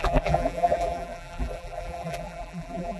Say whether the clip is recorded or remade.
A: remade